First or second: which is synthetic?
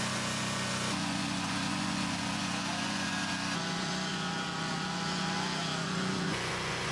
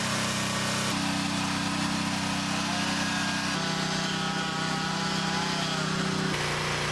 first